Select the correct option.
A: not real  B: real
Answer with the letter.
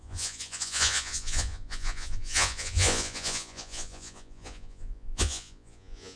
A